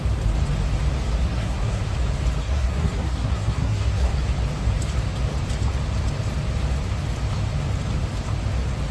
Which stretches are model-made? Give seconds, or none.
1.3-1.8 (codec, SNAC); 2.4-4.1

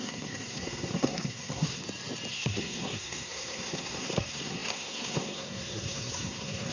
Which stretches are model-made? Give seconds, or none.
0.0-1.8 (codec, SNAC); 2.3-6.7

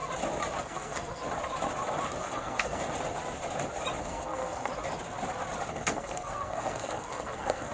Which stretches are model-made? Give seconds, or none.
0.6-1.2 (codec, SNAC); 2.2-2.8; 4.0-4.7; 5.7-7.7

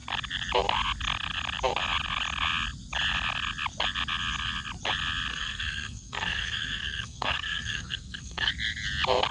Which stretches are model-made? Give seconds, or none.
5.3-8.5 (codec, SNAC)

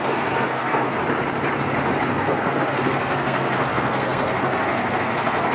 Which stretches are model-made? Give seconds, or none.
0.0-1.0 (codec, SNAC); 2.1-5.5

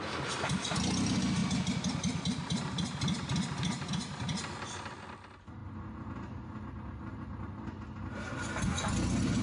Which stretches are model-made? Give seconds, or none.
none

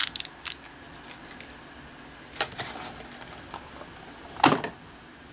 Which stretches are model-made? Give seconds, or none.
none

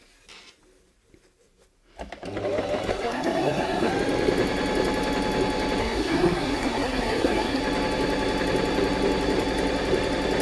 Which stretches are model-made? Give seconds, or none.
2.9-3.9 (codec, SNAC); 5.8-7.6